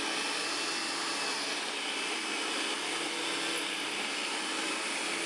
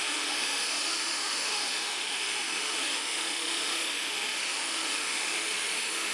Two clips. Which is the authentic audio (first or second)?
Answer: first